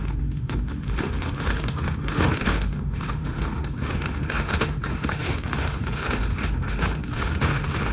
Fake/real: fake